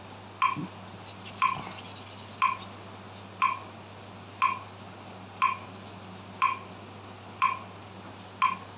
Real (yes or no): yes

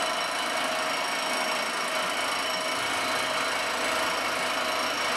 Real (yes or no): yes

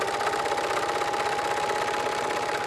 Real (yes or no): yes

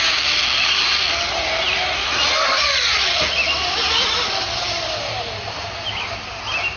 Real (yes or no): yes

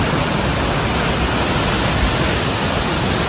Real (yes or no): yes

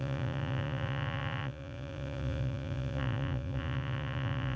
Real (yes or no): no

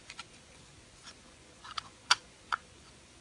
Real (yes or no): no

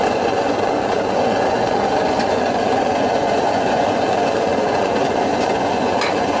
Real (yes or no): no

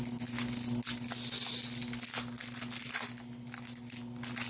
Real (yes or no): yes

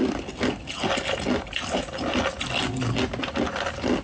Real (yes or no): yes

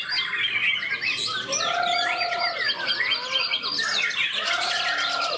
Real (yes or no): yes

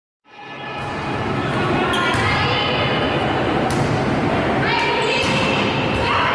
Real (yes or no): yes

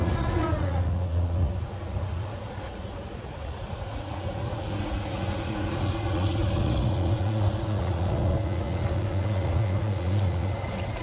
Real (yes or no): no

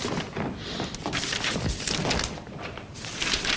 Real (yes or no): yes